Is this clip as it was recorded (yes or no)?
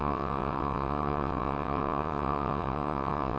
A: no